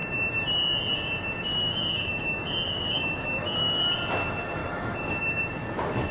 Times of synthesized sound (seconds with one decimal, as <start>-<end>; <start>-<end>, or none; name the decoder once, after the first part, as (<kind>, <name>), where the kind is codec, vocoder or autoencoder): 1.5-3.8 (autoencoder, DAC-VAE); 4.6-5.1